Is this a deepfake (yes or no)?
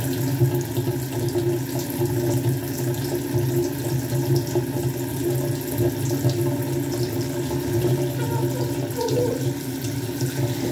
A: no